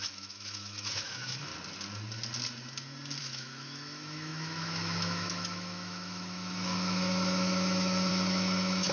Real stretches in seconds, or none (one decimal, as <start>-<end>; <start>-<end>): 1.5-3.2